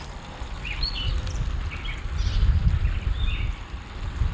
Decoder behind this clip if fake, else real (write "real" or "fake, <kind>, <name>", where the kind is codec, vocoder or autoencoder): real